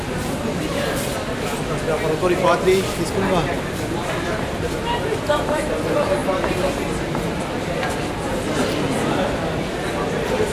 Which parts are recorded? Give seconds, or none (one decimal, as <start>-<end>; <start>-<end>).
0.0-10.5